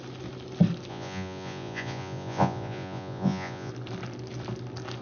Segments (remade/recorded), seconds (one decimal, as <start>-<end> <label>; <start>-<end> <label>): 0.0-0.9 recorded; 0.9-3.7 remade; 3.7-5.0 recorded